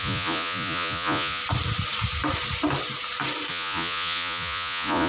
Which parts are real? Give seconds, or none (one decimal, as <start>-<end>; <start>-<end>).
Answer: 1.4-3.5

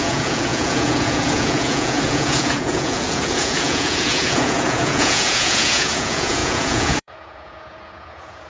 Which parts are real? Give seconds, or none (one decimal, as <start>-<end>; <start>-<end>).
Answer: none

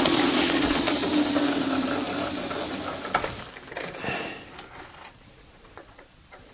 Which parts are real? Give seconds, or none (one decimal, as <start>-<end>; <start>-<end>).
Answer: 1.0-4.8